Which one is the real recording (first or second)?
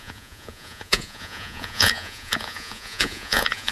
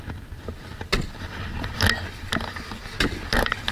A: second